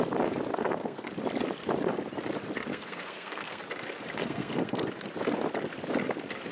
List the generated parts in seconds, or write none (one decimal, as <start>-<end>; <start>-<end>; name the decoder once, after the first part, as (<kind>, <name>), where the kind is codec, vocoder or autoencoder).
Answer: 0.5-1.1 (codec, SNAC); 2.7-3.6; 4.2-4.9